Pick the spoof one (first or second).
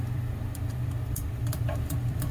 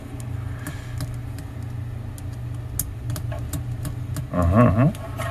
first